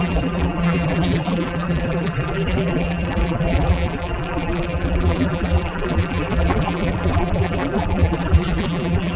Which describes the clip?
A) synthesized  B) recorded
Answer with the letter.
A